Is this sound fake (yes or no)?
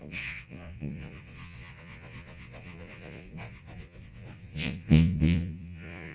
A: yes